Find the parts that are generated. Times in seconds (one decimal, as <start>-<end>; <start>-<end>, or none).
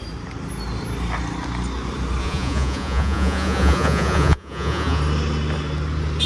2.2-5.0